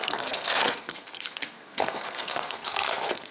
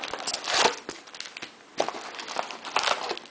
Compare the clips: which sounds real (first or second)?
second